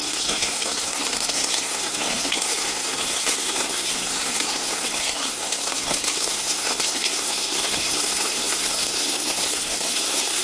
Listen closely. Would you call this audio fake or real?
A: fake